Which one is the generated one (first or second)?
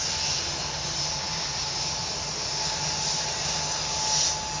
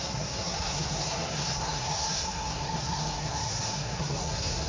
second